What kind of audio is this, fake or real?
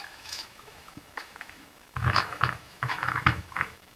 fake